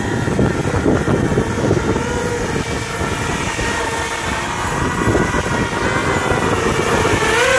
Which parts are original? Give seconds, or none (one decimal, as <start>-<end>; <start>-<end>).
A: 0.0-7.6